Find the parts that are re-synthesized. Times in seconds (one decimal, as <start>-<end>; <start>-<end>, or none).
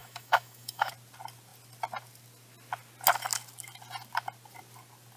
0.0-0.9